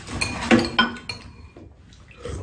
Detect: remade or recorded recorded